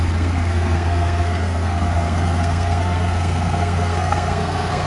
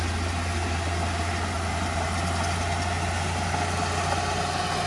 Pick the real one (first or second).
second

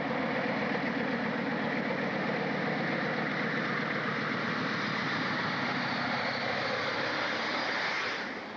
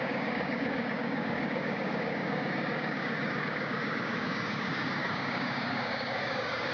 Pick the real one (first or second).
first